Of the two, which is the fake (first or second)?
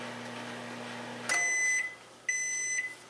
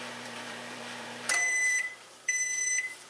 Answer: second